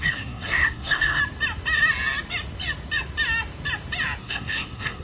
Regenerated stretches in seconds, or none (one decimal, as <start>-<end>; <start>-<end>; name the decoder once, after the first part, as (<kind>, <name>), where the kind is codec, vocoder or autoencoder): 0.0-1.2 (codec, SNAC); 4.2-5.0